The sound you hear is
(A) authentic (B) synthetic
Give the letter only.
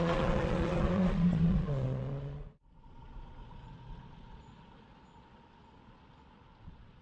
B